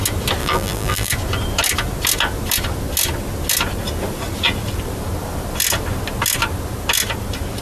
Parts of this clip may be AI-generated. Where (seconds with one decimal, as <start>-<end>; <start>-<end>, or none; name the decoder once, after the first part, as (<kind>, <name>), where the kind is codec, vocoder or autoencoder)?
0.4-1.1 (vocoder, BigVGAN v2)